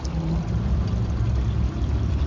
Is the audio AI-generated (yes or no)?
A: yes